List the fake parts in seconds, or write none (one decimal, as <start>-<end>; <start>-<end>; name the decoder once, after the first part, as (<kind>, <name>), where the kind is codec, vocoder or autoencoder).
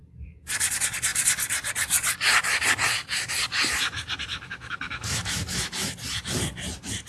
4.3-5.9 (autoencoder, DAC-VAE)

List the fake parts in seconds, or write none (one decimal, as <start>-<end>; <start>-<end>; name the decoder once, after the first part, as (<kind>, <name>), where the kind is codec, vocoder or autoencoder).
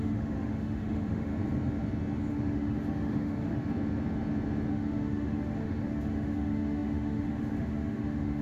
0.0-1.3 (autoencoder, DAC-VAE); 2.3-3.6; 4.7-8.4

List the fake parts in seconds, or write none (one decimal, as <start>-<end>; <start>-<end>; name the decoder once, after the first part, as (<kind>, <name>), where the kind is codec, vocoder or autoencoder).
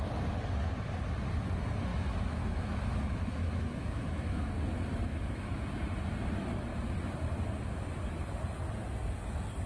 1.9-4.5 (autoencoder, DAC-VAE); 5.1-5.6